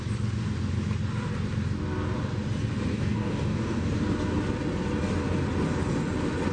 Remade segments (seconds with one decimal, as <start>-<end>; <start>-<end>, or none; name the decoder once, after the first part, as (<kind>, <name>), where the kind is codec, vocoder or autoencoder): 2.9-3.9 (codec, DAC)